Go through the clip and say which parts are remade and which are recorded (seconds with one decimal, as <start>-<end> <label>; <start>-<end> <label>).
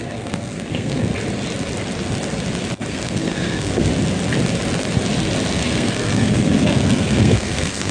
0.0-1.1 remade; 1.1-2.9 recorded; 2.9-3.9 remade; 3.9-5.5 recorded; 5.5-7.9 remade